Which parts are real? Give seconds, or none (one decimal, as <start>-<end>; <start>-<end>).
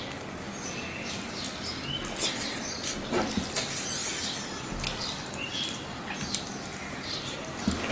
0.0-6.8; 7.4-7.9